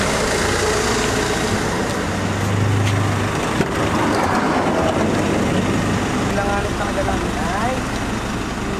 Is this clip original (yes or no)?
yes